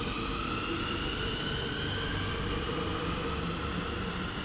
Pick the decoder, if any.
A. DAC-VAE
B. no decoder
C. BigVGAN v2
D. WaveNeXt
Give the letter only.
B